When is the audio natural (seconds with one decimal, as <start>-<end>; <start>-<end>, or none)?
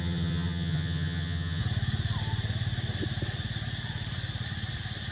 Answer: 1.6-5.1